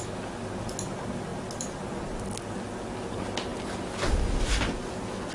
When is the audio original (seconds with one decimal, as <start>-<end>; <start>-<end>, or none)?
0.0-5.3